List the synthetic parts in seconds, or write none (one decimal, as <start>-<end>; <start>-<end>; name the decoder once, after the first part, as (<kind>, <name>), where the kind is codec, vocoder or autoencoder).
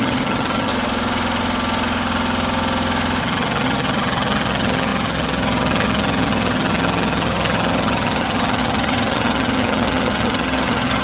0.0-0.7 (vocoder, HiFi-GAN); 3.2-11.0